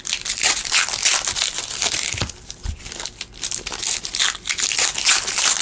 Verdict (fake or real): real